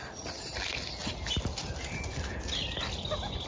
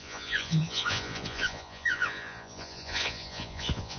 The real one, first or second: first